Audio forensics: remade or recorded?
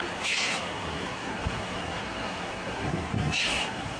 remade